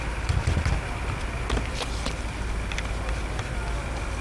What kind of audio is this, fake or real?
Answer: real